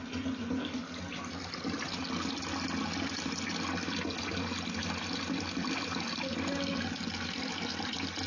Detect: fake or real real